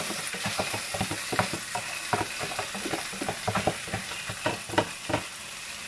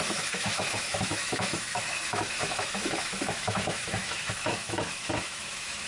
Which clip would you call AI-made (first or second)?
second